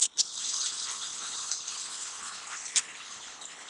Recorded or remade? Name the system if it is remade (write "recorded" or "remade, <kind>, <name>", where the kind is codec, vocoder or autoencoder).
remade, codec, HILCodec